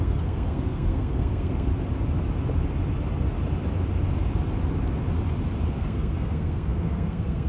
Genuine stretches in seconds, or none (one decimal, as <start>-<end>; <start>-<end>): 1.7-5.7